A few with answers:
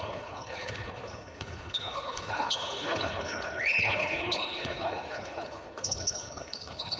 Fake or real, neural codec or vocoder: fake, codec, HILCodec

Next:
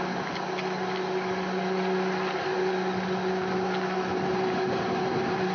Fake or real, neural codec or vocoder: real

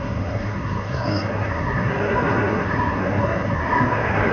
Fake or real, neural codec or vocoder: fake, codec, SNAC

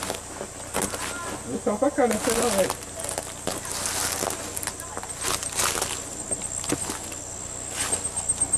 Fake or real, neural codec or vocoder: real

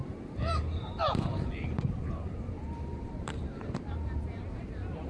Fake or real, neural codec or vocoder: fake, vocoder, BigVGAN v2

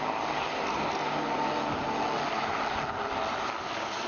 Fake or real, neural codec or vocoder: real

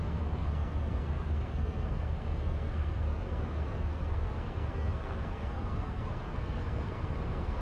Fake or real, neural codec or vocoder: fake, codec, SNAC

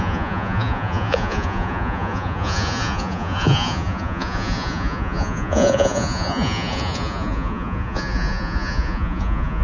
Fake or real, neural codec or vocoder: fake, vocoder, Vocos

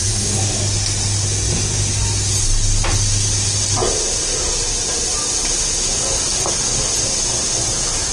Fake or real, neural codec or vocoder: real